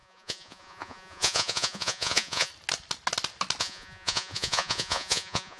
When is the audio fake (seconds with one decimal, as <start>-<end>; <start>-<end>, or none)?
0.0-2.5; 3.6-5.6